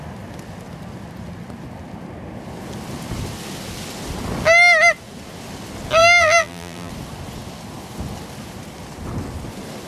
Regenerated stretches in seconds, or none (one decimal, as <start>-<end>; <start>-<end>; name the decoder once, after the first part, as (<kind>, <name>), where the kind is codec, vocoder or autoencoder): 6.0-6.9 (vocoder, BigVGAN v2)